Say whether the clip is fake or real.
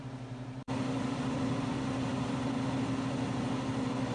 fake